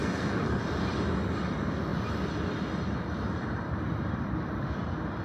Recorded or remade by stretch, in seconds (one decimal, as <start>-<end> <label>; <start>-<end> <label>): 0.0-0.6 remade; 0.6-5.2 recorded